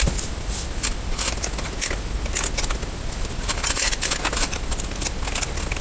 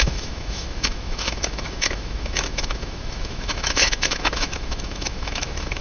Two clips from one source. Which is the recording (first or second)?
first